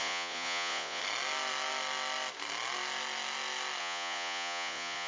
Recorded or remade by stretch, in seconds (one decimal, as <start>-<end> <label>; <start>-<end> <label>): 0.0-1.0 remade; 1.0-3.8 recorded; 3.8-5.1 remade